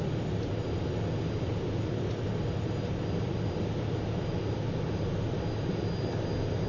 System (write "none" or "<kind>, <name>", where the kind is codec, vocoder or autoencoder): none